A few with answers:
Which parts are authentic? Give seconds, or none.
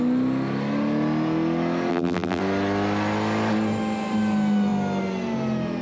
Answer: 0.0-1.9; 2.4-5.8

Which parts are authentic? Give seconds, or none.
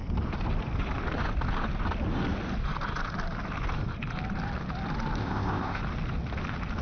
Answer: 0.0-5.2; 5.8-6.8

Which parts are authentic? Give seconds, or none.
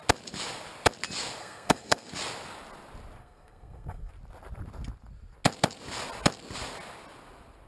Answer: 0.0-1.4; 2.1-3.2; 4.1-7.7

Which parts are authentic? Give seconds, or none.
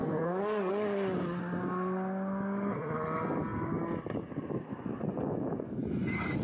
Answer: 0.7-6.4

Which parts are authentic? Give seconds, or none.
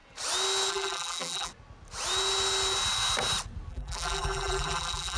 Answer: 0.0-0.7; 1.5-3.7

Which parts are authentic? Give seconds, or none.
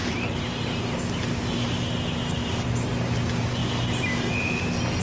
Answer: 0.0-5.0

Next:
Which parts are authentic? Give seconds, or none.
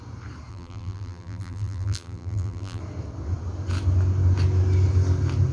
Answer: 0.0-0.5; 2.8-5.5